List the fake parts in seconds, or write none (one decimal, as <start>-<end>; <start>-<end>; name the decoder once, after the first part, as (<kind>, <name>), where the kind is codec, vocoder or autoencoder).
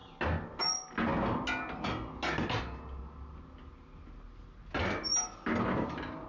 none